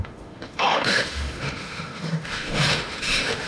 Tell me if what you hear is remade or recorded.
remade